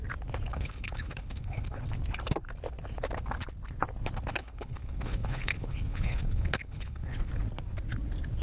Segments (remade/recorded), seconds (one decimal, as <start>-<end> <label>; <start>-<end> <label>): 0.0-0.5 recorded; 0.5-1.8 remade; 1.8-4.4 recorded; 4.4-7.3 remade; 7.3-8.4 recorded